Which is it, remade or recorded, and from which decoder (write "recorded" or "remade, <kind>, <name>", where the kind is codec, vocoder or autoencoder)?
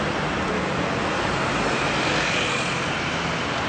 recorded